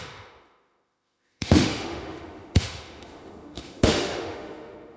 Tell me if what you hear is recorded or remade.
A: remade